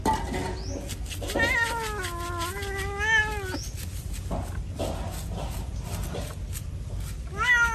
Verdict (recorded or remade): recorded